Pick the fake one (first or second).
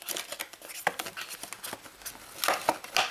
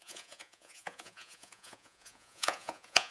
second